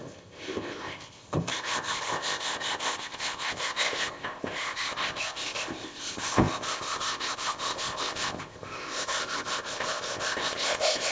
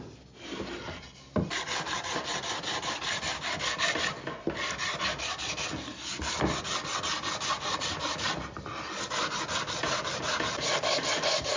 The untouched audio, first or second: second